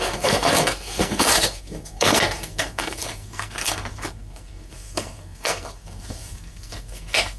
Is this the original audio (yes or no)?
no